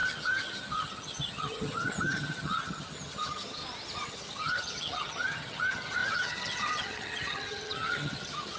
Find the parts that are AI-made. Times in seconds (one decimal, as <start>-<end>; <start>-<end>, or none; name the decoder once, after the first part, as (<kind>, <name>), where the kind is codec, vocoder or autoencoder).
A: 0.0-3.6 (vocoder, HiFi-GAN); 4.1-8.6